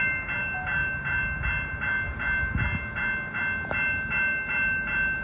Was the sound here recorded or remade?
recorded